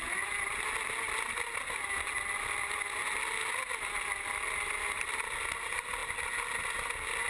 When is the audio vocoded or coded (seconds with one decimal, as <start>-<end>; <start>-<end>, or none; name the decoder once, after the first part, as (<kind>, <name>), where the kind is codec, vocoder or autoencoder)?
none